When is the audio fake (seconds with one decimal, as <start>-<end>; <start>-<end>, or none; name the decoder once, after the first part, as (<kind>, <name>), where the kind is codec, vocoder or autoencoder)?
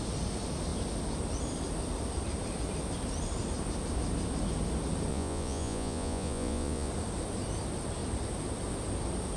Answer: 5.1-6.9 (vocoder, Vocos)